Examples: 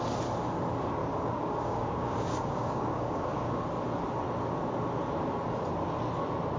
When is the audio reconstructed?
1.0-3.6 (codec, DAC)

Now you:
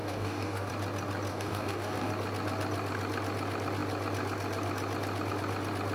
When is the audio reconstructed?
0.0-0.7 (codec, DAC); 1.3-2.1